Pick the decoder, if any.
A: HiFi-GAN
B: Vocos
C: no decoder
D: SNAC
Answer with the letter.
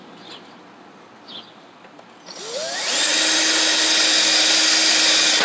C